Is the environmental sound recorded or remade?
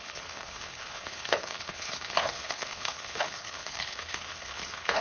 remade